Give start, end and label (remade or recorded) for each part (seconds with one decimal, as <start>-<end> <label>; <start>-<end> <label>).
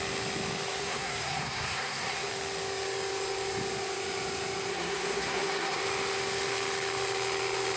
0.0-0.8 recorded; 0.8-2.3 remade; 2.3-4.7 recorded; 4.7-5.8 remade; 5.8-7.8 recorded